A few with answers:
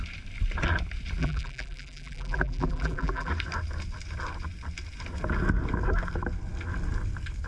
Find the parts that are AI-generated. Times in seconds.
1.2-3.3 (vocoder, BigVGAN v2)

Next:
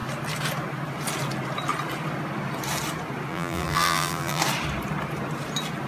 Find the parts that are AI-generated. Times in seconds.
3.3-4.4 (vocoder, BigVGAN v2)

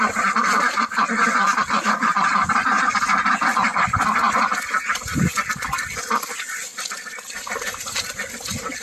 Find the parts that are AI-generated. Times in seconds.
none

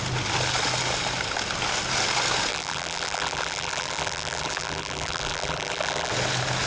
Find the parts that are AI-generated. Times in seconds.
2.5-6.1 (vocoder, BigVGAN v2)